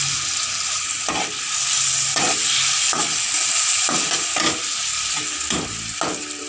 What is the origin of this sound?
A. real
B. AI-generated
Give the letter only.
A